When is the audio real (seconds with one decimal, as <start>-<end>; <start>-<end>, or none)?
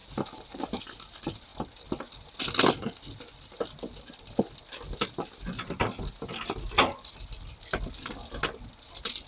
0.8-9.3